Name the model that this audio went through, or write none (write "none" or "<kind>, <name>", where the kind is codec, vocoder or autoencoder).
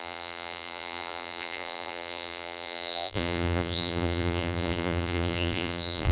vocoder, BigVGAN v2